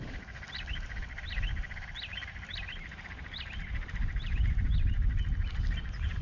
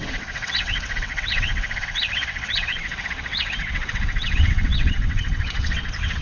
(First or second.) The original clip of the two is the first